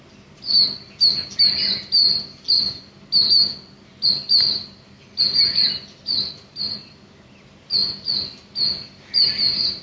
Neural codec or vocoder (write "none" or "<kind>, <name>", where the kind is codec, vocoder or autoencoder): none